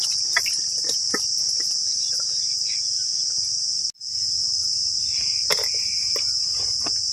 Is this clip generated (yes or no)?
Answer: no